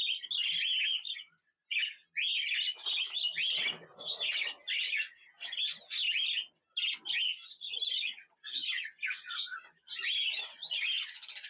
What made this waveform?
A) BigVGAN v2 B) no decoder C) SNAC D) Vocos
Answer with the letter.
B